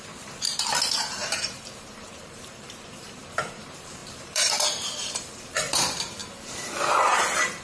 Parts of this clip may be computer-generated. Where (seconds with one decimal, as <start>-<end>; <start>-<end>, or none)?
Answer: 0.0-7.6